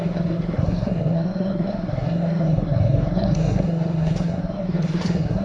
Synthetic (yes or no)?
yes